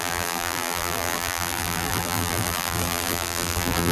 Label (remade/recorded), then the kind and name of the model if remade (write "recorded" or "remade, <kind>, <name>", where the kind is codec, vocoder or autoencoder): remade, vocoder, BigVGAN v2